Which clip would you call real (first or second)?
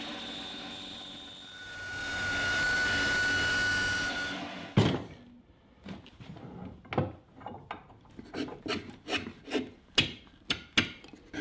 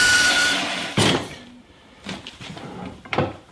first